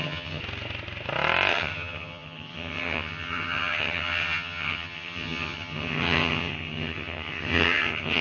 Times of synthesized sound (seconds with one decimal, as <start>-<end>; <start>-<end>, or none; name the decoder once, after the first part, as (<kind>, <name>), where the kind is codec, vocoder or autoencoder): 0.0-0.4 (vocoder, HiFi-GAN); 1.5-8.2